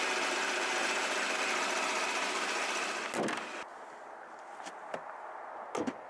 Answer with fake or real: real